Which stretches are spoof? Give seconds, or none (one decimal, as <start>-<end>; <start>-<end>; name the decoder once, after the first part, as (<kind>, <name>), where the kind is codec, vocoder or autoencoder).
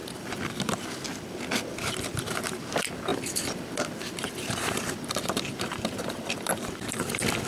0.0-7.5 (vocoder, BigVGAN v2)